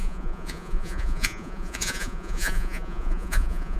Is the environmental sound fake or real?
fake